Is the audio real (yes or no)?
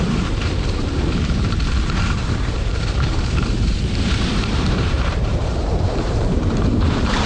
no